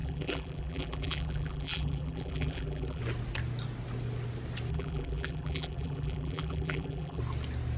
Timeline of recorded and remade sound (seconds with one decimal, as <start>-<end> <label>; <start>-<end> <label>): 0.0-3.0 remade; 3.0-4.7 recorded; 4.7-7.2 remade; 7.2-7.8 recorded